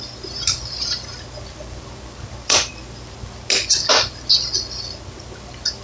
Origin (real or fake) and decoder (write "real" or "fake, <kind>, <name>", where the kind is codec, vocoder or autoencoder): real